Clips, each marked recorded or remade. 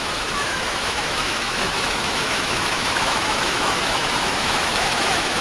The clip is remade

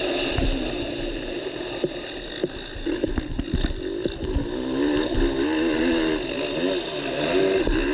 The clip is recorded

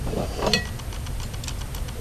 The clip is recorded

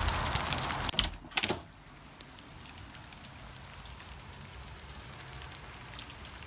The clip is recorded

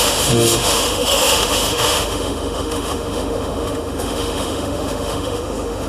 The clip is remade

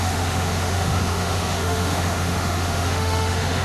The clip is remade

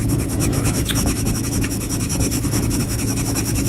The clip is remade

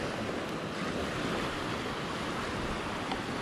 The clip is recorded